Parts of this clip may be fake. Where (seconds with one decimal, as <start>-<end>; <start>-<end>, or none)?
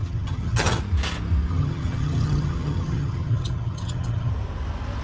0.0-0.8; 1.5-4.3